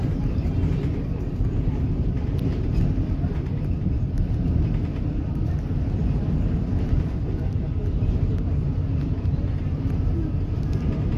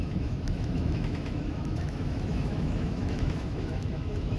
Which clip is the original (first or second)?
first